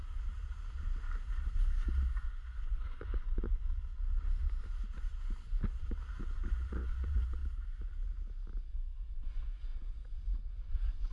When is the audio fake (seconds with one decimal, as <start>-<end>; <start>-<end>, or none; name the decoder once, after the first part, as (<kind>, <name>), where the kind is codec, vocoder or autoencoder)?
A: 2.1-3.6 (vocoder, Vocos); 6.5-7.4; 8.7-11.1